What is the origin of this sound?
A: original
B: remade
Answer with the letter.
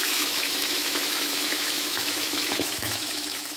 B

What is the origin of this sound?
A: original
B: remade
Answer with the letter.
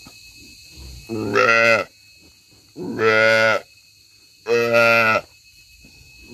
A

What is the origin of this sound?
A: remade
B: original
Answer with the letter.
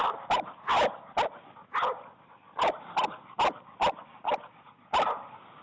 B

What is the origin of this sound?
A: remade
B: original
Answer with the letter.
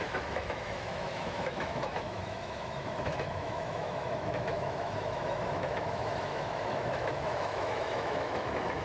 A